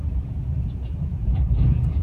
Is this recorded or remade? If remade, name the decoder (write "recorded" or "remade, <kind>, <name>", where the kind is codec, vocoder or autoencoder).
remade, vocoder, Vocos